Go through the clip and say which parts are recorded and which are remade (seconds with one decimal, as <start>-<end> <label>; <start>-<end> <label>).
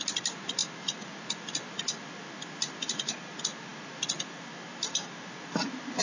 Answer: 0.0-6.0 recorded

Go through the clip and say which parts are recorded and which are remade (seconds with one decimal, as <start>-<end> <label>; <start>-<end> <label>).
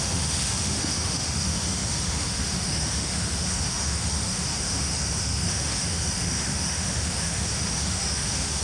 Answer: 0.0-8.6 remade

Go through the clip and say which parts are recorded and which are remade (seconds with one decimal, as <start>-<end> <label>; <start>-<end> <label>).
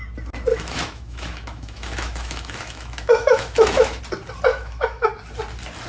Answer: 0.0-0.5 recorded; 0.5-4.0 remade; 4.0-4.5 recorded; 4.5-5.1 remade; 5.1-5.9 recorded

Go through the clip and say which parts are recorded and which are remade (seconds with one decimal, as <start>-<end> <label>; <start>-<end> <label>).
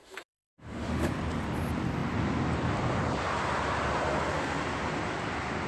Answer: 0.0-1.1 remade; 1.1-5.7 recorded